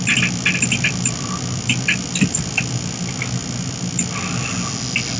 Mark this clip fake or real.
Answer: real